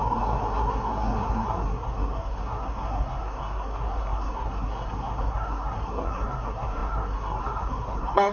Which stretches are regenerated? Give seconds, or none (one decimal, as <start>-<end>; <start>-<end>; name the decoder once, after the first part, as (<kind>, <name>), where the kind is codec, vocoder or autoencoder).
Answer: 0.0-8.3 (codec, SNAC)